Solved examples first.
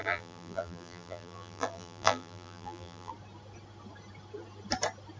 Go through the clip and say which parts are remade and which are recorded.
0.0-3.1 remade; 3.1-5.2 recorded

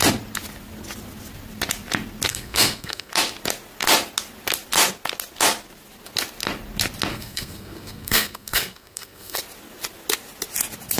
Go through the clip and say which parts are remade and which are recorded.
0.0-2.3 recorded; 2.3-3.1 remade; 3.1-7.1 recorded; 7.1-9.4 remade; 9.4-11.0 recorded

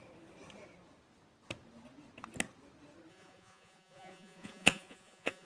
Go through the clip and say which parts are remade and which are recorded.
0.0-3.1 recorded; 3.1-5.5 remade

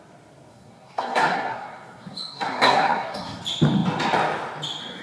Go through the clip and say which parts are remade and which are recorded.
0.0-0.5 recorded; 0.5-3.4 remade; 3.4-5.0 recorded

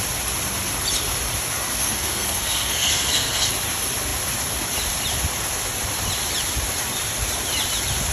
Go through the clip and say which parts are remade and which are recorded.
0.0-1.7 recorded; 1.7-3.5 remade; 3.5-8.1 recorded

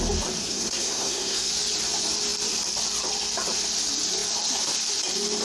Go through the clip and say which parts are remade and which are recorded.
0.0-0.4 recorded; 0.4-1.5 remade; 1.5-5.4 recorded

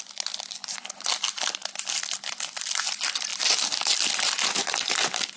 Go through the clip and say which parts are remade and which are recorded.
0.0-5.4 recorded

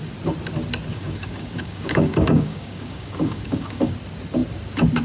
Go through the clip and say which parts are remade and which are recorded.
0.0-0.9 recorded; 0.9-3.9 remade; 3.9-5.0 recorded